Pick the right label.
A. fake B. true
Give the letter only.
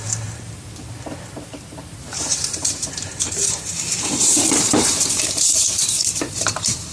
A